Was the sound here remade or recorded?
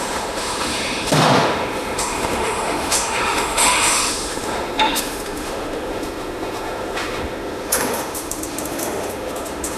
remade